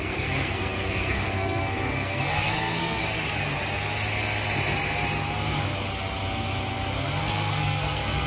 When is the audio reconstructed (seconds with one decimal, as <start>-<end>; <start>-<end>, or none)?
0.0-3.0; 7.2-8.3